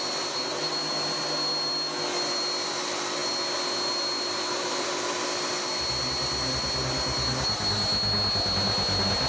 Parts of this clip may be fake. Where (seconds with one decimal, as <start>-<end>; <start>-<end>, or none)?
none